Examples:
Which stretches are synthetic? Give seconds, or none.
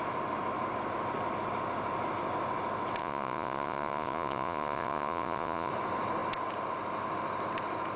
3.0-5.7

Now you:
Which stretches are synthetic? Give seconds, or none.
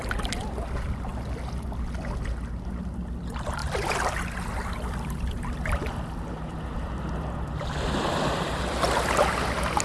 3.6-6.2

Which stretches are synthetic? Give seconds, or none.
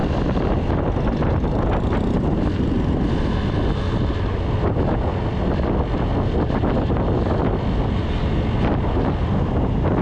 none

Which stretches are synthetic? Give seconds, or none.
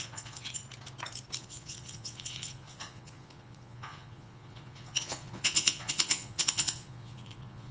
0.0-0.6; 1.4-7.7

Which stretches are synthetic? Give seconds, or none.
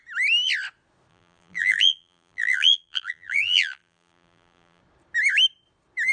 1.1-4.8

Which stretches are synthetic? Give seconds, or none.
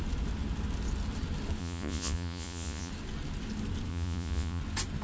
1.6-2.9; 3.9-4.6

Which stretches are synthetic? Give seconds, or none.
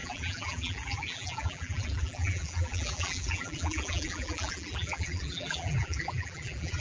0.0-6.8